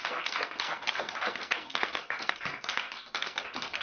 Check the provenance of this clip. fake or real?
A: fake